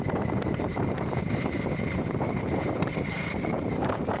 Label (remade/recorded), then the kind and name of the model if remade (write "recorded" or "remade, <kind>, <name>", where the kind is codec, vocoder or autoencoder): remade, vocoder, BigVGAN v2